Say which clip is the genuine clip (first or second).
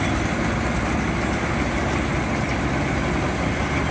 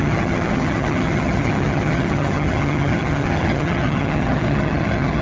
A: first